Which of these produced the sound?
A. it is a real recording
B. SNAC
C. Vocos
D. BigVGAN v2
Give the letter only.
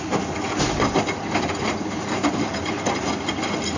D